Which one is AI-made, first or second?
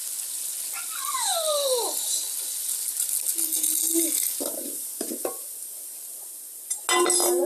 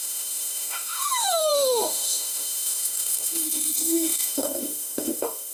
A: second